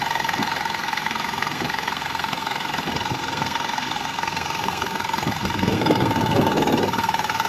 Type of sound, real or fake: fake